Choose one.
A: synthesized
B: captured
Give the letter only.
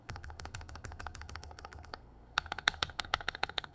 A